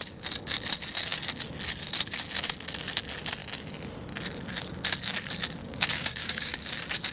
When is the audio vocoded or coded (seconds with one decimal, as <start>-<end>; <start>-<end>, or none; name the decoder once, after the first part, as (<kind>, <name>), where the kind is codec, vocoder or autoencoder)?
5.6-6.5 (codec, DAC)